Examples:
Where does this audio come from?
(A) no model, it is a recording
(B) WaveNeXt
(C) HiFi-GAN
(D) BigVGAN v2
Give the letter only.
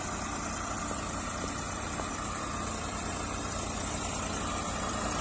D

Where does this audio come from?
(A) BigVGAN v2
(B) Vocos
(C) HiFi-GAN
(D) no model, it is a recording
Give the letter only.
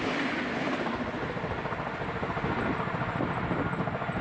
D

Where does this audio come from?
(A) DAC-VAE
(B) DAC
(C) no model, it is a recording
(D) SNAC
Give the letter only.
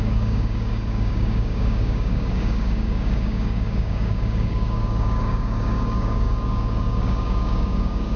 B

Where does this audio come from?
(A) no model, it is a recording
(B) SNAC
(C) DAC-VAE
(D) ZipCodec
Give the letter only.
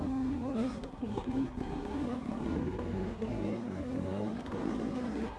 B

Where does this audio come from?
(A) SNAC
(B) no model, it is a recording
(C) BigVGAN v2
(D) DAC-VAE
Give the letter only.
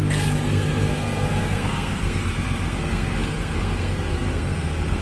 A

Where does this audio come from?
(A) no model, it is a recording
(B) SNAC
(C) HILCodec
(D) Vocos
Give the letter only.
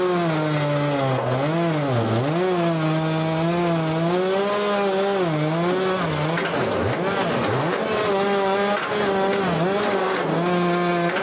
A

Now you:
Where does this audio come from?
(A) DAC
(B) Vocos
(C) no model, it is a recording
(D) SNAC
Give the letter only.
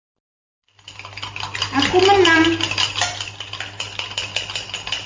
C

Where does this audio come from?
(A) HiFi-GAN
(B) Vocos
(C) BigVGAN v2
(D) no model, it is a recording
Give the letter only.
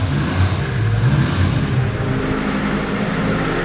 D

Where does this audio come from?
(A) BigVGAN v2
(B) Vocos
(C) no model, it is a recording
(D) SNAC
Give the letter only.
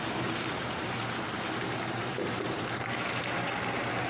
A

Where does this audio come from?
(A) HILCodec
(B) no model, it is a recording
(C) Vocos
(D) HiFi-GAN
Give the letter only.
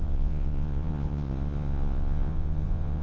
C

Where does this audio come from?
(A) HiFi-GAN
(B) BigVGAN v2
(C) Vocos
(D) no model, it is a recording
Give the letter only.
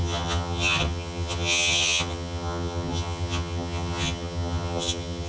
A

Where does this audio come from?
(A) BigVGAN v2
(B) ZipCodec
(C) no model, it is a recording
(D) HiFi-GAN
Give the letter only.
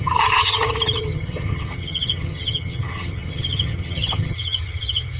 D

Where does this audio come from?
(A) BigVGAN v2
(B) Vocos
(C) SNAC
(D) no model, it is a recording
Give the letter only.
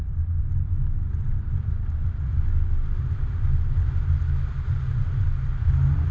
D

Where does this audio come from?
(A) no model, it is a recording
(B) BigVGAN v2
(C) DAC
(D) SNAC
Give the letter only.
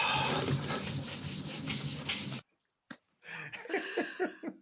A